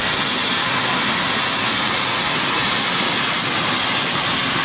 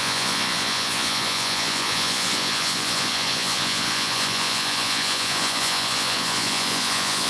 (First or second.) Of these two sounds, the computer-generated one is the second